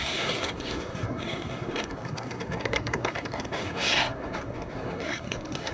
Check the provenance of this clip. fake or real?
fake